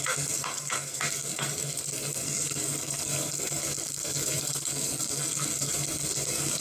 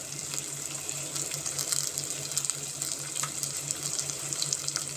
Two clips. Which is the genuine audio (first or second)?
second